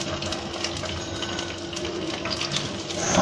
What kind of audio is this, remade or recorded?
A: recorded